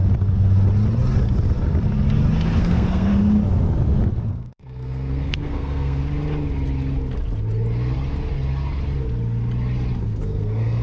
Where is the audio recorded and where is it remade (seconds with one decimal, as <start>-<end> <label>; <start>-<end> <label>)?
0.0-2.6 recorded; 2.6-3.1 remade; 3.1-4.3 recorded; 4.3-6.0 remade; 6.0-10.0 recorded; 10.0-10.8 remade